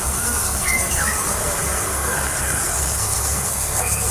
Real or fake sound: fake